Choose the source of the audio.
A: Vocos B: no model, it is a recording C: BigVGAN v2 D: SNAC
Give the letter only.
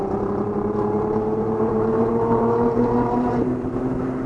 C